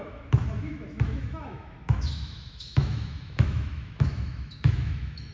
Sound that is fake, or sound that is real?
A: fake